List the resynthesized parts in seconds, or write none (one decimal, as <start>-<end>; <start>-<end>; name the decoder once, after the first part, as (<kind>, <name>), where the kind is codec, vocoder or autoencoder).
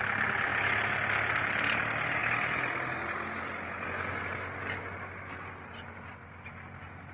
none